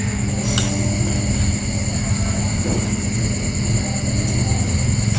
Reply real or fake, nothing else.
real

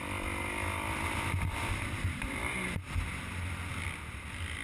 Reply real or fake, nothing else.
real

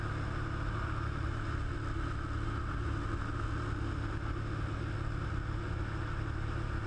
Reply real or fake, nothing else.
real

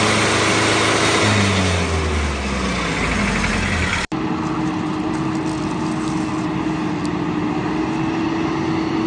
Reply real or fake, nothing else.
real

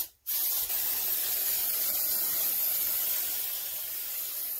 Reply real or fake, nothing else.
real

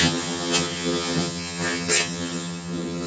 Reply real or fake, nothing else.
fake